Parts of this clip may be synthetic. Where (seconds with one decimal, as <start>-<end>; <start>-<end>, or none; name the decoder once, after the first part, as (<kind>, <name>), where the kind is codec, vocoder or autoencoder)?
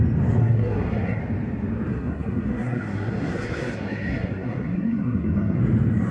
0.4-1.2 (codec, SNAC); 1.9-5.6